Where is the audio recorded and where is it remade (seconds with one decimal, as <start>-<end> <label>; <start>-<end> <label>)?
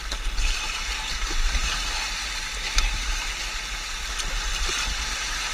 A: 0.0-5.5 recorded